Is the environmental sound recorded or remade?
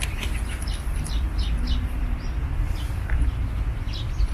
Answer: recorded